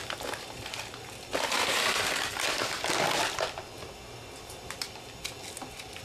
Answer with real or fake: real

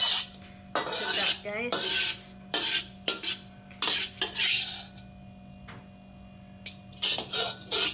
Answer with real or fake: real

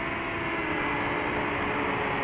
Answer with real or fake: real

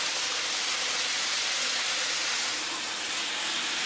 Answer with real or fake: real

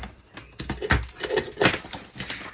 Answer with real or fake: real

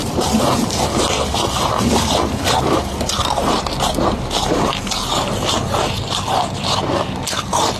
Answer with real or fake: fake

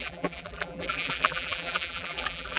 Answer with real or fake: fake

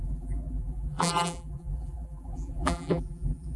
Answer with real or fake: fake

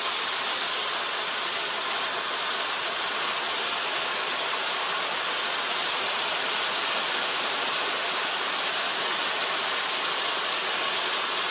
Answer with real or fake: real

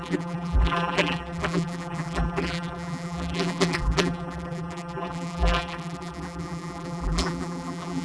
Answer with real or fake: fake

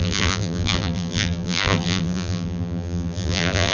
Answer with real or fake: fake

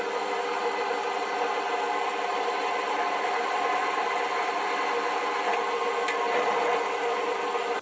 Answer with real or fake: real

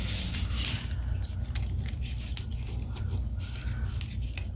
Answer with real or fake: real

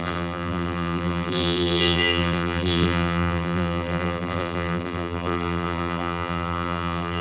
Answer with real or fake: fake